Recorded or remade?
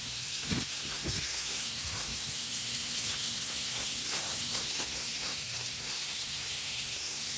remade